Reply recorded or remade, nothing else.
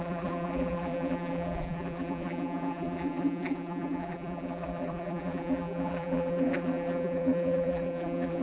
remade